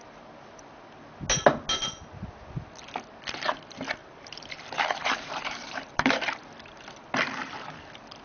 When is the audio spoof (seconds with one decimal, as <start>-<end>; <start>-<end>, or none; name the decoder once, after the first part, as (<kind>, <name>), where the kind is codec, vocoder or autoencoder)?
0.0-0.7 (vocoder, BigVGAN v2); 4.0-6.2